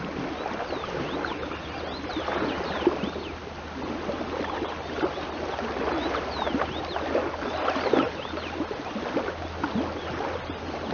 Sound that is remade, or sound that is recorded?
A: recorded